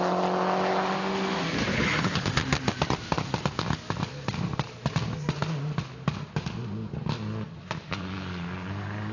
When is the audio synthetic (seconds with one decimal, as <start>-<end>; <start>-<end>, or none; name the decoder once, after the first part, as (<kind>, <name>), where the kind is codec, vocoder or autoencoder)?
1.7-2.3 (codec, HILCodec)